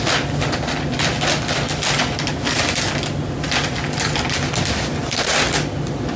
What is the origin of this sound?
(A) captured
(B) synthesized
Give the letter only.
A